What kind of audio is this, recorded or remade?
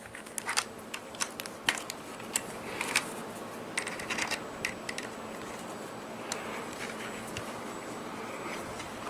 recorded